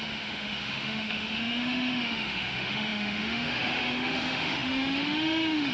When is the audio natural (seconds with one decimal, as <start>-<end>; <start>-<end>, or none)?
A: none